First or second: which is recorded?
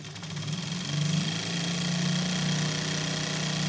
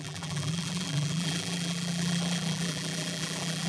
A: first